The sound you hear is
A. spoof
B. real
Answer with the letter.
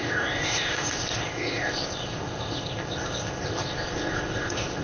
A